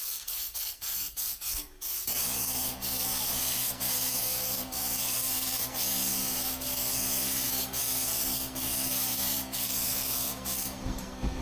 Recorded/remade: remade